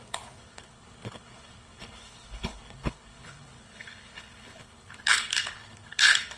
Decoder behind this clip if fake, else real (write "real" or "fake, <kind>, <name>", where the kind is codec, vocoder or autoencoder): fake, codec, HILCodec